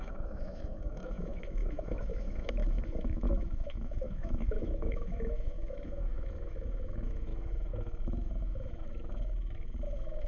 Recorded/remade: remade